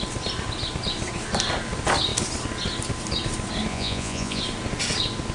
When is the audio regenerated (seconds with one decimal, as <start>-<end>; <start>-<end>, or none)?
3.7-4.4